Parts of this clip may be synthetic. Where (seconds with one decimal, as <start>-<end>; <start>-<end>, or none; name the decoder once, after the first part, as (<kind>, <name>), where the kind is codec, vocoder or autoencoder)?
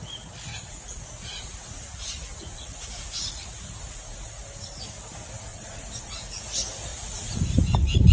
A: 0.5-4.8 (vocoder, Vocos); 5.5-6.4; 6.9-7.4